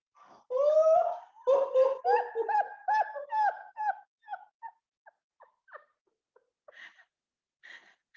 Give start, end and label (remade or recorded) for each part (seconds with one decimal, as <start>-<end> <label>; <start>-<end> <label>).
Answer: 0.0-8.2 recorded